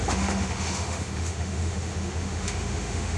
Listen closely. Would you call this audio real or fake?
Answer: fake